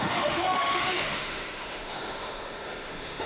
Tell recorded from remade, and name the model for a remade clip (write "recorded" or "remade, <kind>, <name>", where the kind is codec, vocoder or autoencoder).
remade, autoencoder, DAC-VAE